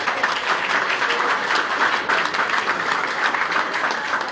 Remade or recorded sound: recorded